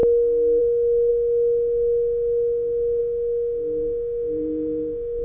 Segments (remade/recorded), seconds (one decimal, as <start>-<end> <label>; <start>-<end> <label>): 0.0-0.6 recorded; 0.6-5.2 remade